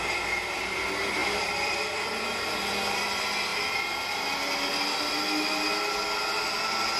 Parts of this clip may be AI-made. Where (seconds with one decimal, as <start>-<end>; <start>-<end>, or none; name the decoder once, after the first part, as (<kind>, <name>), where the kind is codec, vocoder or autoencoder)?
1.2-2.2 (vocoder, BigVGAN v2)